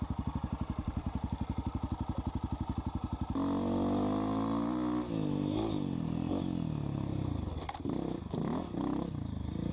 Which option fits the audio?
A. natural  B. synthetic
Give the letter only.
A